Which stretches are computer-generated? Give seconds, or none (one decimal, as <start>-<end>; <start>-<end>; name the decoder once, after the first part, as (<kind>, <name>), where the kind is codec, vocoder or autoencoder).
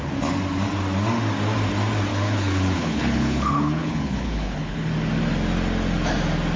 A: 2.1-4.9 (codec, HILCodec)